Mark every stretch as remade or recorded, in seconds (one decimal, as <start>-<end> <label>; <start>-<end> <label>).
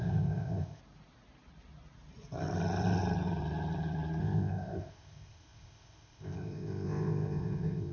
0.0-0.8 remade; 0.8-4.2 recorded; 4.2-7.9 remade